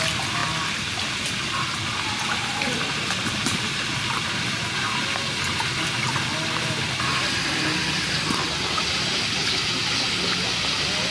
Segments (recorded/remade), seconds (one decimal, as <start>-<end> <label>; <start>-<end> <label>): 0.0-11.1 recorded